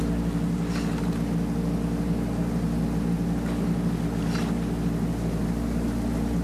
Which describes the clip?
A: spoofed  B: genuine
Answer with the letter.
B